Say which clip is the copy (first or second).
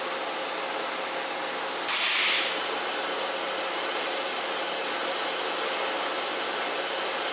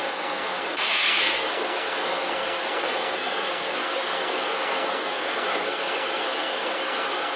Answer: second